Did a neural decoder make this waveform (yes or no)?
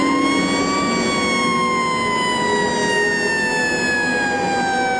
no